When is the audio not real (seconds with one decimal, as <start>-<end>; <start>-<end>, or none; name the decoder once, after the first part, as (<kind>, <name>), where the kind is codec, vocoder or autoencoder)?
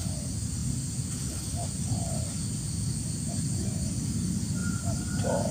none